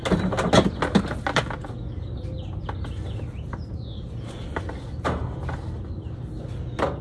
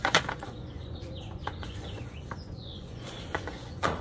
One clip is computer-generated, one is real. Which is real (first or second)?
first